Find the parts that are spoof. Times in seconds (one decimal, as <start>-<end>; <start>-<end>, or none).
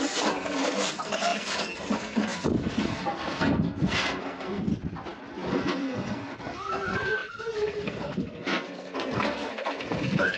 0.0-4.7; 5.5-10.4